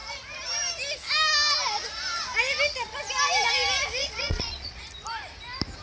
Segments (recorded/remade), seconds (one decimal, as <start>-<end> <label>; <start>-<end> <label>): 0.0-4.0 recorded; 4.0-4.8 remade; 4.8-5.8 recorded